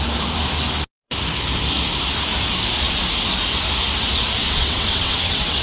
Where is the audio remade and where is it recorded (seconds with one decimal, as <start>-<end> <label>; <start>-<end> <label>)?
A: 0.0-4.4 recorded; 4.4-5.6 remade